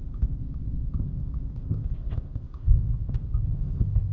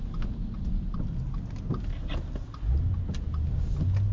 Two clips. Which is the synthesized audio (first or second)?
first